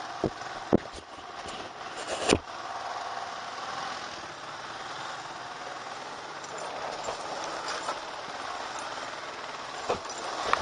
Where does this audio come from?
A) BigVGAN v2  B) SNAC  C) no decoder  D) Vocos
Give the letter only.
C